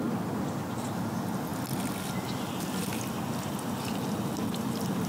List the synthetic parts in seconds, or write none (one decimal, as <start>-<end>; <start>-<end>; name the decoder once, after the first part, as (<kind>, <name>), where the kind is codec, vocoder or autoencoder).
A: none